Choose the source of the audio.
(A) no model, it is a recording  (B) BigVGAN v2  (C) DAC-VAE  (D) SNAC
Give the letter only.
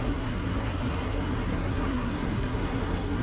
D